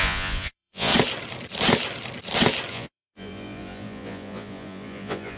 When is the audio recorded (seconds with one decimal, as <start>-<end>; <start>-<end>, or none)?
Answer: 0.9-2.7